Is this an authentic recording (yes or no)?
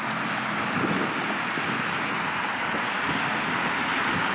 yes